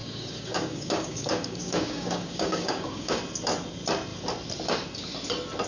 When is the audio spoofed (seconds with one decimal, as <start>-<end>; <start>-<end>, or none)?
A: 0.0-3.2